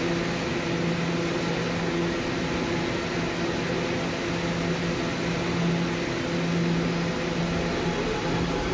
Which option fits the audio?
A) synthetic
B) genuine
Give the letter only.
B